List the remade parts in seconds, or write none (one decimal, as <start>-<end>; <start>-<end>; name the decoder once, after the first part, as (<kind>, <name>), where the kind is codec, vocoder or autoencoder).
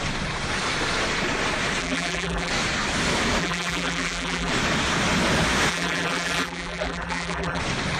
1.8-2.5 (vocoder, BigVGAN v2); 3.4-4.5; 5.7-7.6